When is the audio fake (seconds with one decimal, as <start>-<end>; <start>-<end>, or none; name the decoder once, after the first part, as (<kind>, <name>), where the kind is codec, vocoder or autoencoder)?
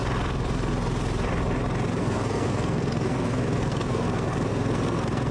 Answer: 1.9-5.3 (codec, SNAC)